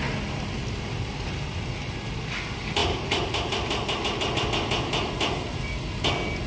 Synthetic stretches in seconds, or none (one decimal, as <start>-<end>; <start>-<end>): none